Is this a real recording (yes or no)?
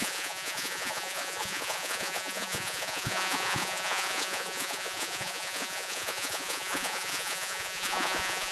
no